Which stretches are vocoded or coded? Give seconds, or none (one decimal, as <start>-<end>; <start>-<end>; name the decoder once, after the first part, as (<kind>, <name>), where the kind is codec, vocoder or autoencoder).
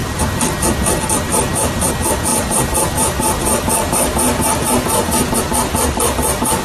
2.3-5.4 (vocoder, BigVGAN v2)